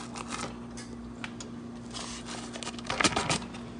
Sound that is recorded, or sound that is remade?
recorded